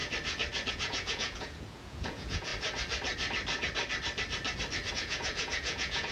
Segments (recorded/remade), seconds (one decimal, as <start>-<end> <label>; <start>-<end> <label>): 0.0-0.7 recorded; 0.7-2.5 remade; 2.5-4.9 recorded; 4.9-6.1 remade